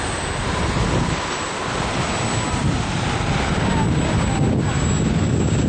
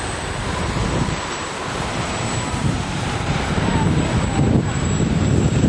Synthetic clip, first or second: second